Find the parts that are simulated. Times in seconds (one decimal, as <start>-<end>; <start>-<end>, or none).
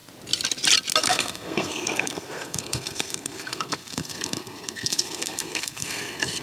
1.0-6.4